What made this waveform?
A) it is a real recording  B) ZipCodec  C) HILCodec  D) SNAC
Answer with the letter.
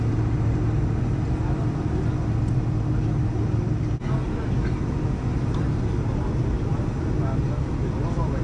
A